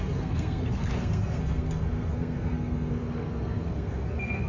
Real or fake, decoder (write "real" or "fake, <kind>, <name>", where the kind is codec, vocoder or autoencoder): fake, codec, SNAC